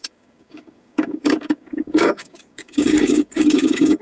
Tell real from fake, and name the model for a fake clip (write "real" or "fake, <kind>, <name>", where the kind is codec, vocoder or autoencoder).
fake, codec, DAC